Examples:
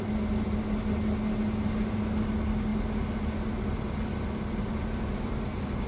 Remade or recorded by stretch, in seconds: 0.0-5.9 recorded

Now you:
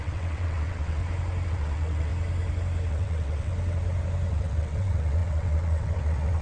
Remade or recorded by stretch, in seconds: 0.0-1.0 remade; 1.0-1.5 recorded; 1.5-2.1 remade; 2.1-2.9 recorded; 2.9-3.5 remade; 3.5-4.3 recorded; 4.3-6.4 remade

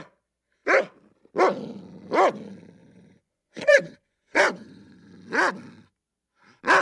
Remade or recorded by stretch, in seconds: 0.0-2.8 recorded; 2.8-5.1 remade; 5.1-6.8 recorded

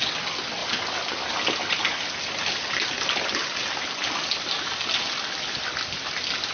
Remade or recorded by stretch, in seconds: 0.0-6.5 recorded

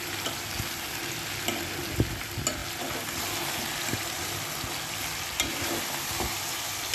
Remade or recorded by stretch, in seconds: 0.0-6.9 recorded

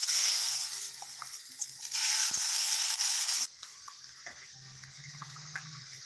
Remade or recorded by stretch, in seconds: 0.0-6.1 remade

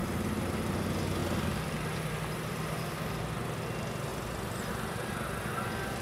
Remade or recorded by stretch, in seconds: 0.0-6.0 recorded

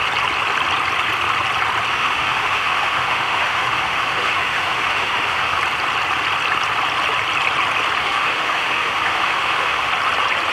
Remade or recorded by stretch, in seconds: 0.0-1.9 recorded; 1.9-5.6 remade; 5.6-8.0 recorded; 8.0-9.9 remade; 9.9-10.5 recorded